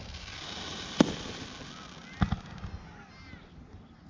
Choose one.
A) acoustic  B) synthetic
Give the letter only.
A